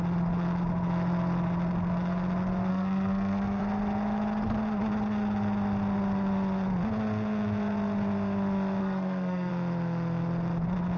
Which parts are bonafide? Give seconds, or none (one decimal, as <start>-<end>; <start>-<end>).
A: 0.0-2.7; 3.6-8.8; 9.5-11.0